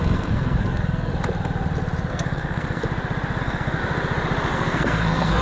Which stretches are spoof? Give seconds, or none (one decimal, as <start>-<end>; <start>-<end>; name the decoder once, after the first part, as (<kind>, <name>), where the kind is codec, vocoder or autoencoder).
0.0-1.1 (codec, SNAC); 2.1-2.8; 3.4-3.8; 4.5-5.4